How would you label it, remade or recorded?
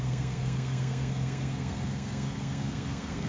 remade